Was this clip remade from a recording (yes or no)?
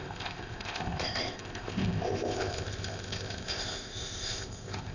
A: yes